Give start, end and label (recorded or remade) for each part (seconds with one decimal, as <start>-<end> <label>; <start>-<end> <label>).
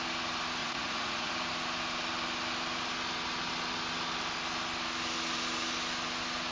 0.0-0.6 recorded; 0.6-1.3 remade; 1.3-6.5 recorded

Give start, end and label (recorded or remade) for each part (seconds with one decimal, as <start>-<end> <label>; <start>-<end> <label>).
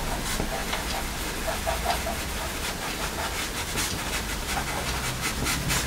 0.0-5.9 recorded